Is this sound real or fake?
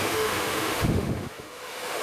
fake